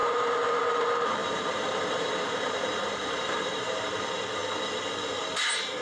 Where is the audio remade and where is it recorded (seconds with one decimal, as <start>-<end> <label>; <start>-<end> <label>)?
0.0-0.6 remade; 0.6-1.2 recorded; 1.2-3.9 remade; 3.9-5.8 recorded